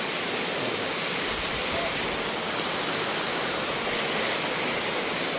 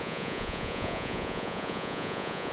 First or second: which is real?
first